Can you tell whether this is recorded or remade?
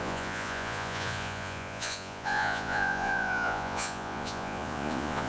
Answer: remade